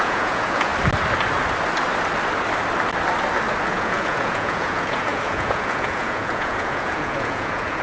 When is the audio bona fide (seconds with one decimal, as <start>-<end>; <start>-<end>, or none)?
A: 0.7-3.7